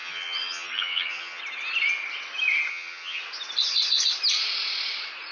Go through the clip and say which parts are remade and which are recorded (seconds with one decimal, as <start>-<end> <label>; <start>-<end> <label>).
0.0-1.4 remade; 1.4-2.7 recorded; 2.7-3.2 remade; 3.2-5.3 recorded